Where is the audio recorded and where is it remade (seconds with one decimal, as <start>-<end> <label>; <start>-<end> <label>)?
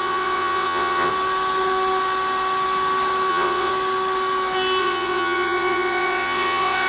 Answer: 0.0-1.1 remade; 1.1-3.3 recorded; 3.3-3.7 remade; 3.7-4.8 recorded; 4.8-6.9 remade